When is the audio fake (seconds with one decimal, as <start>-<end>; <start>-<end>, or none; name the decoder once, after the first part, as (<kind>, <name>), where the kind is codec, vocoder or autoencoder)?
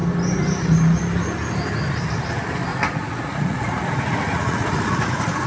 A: 2.7-5.5 (vocoder, Vocos)